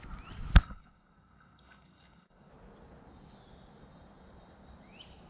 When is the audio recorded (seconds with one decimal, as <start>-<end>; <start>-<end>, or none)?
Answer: 0.0-0.6; 2.5-5.3